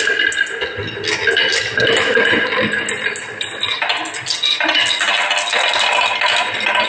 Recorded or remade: recorded